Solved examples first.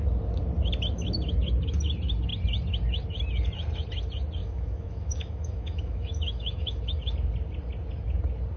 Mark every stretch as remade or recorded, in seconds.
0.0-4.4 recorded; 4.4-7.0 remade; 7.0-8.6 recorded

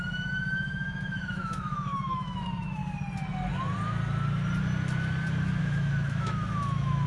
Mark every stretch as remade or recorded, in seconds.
0.0-2.8 remade; 2.8-5.6 recorded; 5.6-7.1 remade

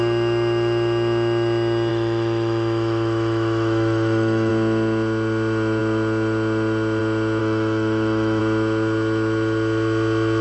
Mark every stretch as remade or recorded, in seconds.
0.0-1.9 recorded; 1.9-4.5 remade; 4.5-7.4 recorded; 7.4-8.4 remade; 8.4-10.4 recorded

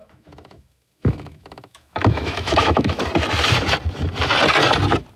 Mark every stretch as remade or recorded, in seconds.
0.0-3.1 remade; 3.1-5.2 recorded

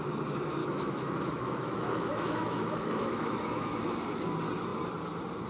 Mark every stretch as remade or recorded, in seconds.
0.0-0.6 recorded; 0.6-3.9 remade; 3.9-5.5 recorded

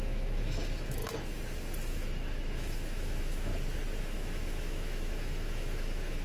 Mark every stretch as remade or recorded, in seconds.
0.0-1.0 remade; 1.0-1.9 recorded; 1.9-3.5 remade; 3.5-4.0 recorded; 4.0-6.2 remade

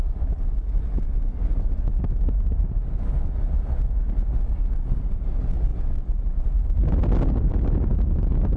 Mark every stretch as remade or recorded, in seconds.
0.0-8.6 recorded

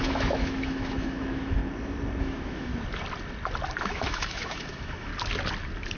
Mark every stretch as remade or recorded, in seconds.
0.0-1.6 remade; 1.6-2.2 recorded; 2.2-2.7 remade; 2.7-3.8 recorded; 3.8-5.1 remade; 5.1-6.0 recorded